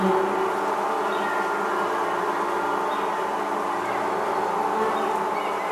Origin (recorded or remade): recorded